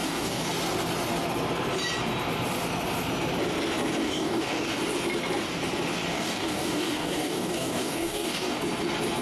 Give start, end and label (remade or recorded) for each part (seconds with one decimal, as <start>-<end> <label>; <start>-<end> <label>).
0.0-0.5 remade; 0.5-4.0 recorded; 4.0-4.8 remade; 4.8-6.1 recorded; 6.1-8.6 remade; 8.6-9.2 recorded